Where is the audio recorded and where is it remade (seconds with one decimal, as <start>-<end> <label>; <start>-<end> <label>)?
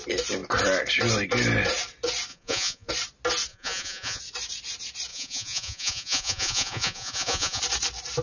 0.0-2.3 recorded; 2.3-2.9 remade; 2.9-3.5 recorded; 3.5-4.2 remade; 4.2-5.1 recorded; 5.1-7.6 remade; 7.6-8.2 recorded